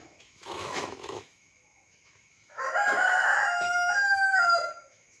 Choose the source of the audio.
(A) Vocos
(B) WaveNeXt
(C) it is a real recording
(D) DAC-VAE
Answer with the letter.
D